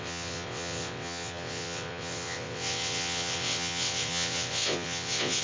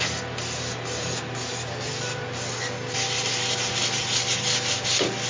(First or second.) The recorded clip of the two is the second